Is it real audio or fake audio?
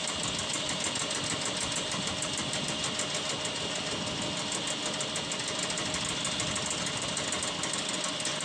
real